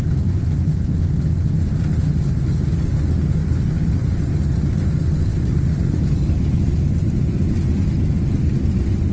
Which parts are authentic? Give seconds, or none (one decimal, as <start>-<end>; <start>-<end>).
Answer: 0.0-3.4; 4.3-5.3; 7.6-9.1